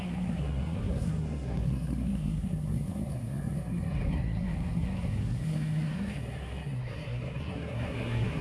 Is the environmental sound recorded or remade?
remade